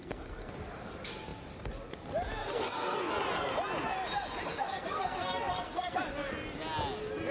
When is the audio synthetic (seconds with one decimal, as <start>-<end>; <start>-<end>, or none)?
0.0-0.5; 2.4-3.1; 4.5-6.0